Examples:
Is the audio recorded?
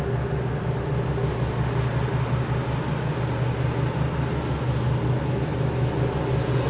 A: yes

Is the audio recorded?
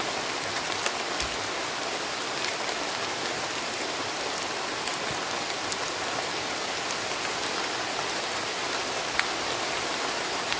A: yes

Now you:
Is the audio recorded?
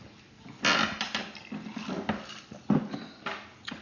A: yes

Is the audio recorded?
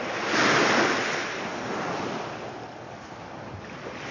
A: yes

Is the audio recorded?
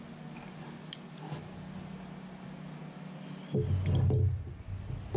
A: yes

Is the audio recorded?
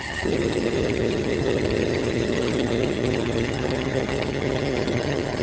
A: no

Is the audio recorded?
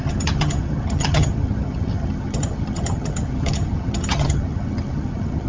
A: no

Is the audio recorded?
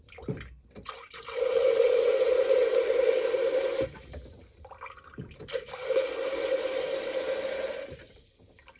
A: yes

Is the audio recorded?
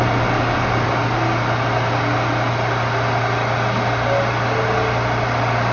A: yes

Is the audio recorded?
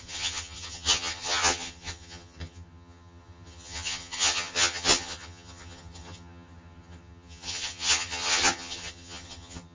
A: no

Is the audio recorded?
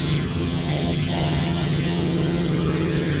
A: no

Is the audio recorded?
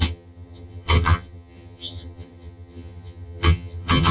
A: no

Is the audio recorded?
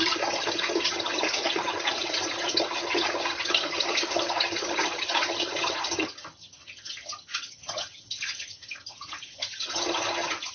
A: no